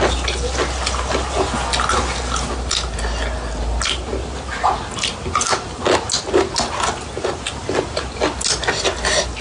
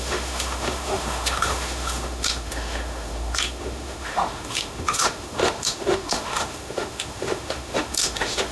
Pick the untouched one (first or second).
first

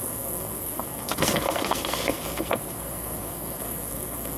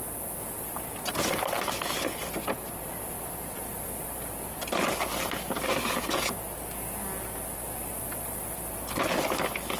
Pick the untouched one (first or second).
second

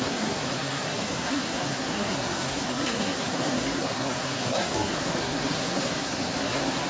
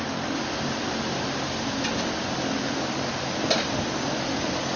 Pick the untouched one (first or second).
second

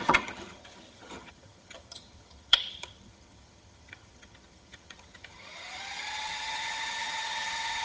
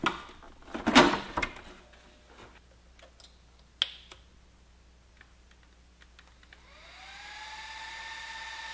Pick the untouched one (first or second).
second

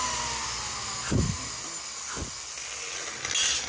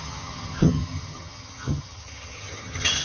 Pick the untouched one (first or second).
first